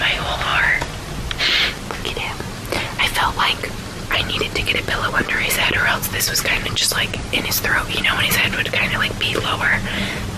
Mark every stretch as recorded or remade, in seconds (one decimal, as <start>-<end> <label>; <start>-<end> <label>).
0.0-10.4 recorded